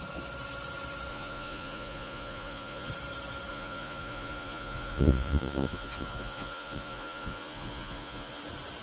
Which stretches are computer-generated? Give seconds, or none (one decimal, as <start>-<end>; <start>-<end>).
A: 1.1-2.9; 3.5-8.4